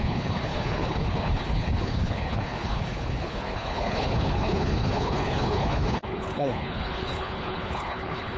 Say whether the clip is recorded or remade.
remade